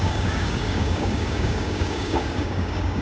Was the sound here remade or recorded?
remade